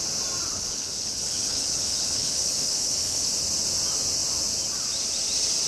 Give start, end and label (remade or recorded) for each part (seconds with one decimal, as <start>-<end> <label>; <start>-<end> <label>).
0.0-0.5 recorded; 0.5-3.3 remade; 3.3-5.7 recorded